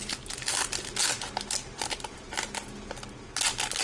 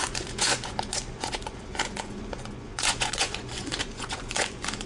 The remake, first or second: second